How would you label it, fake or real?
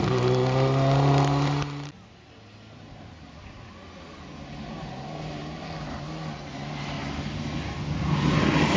real